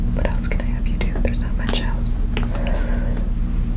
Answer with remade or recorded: recorded